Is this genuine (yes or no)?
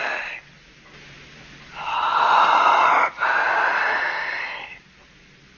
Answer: yes